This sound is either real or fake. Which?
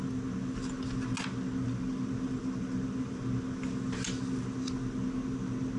real